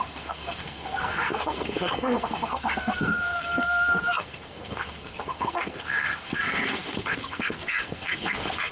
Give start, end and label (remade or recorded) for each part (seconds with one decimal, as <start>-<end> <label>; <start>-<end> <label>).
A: 0.0-8.7 remade

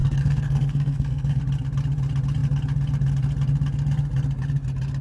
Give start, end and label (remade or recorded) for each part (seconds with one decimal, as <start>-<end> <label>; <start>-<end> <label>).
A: 0.0-1.4 remade; 1.4-5.0 recorded